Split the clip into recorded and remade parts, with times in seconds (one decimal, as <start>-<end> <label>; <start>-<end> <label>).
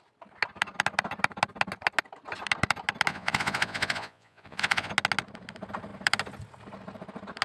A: 0.0-3.1 recorded; 3.1-4.9 remade; 4.9-7.4 recorded